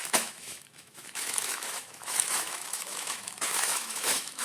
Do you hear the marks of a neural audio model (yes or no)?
yes